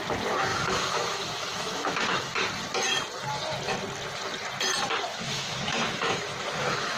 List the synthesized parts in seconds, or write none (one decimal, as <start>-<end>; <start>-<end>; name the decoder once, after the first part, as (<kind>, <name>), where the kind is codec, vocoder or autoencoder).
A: 0.5-2.3 (autoencoder, DAC-VAE); 5.1-7.0